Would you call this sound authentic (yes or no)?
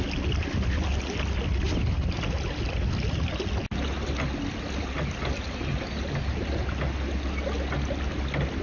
yes